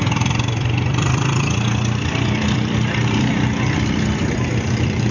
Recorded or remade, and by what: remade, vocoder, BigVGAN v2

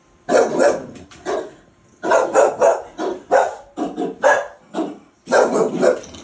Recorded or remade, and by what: recorded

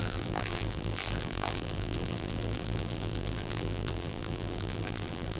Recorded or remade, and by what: remade, vocoder, BigVGAN v2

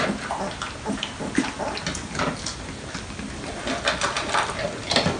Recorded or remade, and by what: recorded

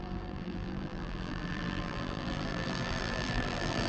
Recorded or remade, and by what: remade, vocoder, BigVGAN v2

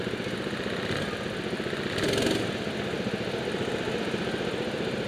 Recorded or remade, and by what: recorded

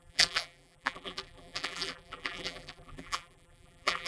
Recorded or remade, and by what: remade, vocoder, BigVGAN v2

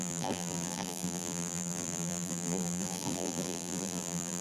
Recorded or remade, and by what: remade, vocoder, BigVGAN v2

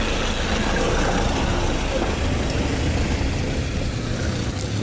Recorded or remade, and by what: recorded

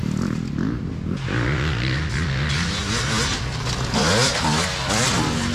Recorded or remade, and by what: recorded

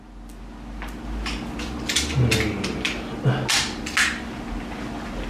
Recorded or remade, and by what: recorded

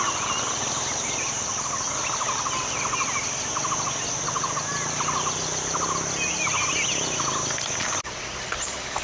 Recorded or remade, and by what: recorded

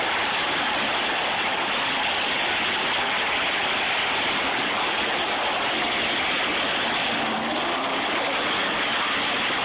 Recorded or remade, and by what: recorded